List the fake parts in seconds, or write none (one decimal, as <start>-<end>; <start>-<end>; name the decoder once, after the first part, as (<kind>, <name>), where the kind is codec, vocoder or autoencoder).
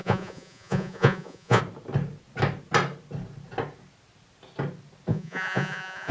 0.0-1.6 (vocoder, Vocos); 5.1-6.1